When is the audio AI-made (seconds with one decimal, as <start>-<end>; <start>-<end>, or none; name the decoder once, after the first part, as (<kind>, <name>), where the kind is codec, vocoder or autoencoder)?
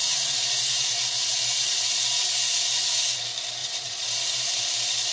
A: 0.0-1.9 (vocoder, Vocos); 3.6-4.6